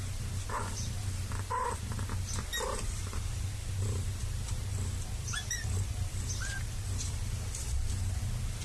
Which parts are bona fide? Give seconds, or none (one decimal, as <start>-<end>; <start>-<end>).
0.6-2.5; 7.6-8.6